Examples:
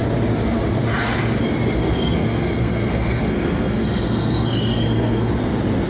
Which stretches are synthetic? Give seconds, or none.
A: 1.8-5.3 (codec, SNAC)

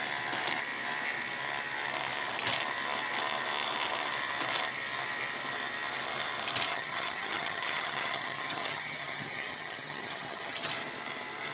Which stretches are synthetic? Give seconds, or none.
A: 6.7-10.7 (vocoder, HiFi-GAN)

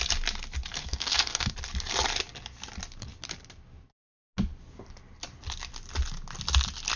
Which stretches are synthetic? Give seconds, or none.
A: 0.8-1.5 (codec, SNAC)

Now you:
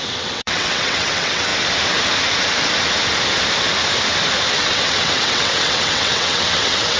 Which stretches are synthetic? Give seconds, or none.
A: 0.0-1.5 (vocoder, WaveNeXt); 4.5-7.0

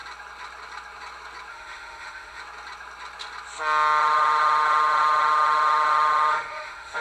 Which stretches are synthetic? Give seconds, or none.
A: 1.5-2.4 (autoencoder, DAC-VAE); 4.0-7.0

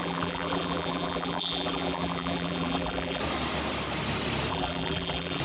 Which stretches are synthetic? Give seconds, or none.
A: 0.0-3.2 (vocoder, BigVGAN v2); 4.5-5.4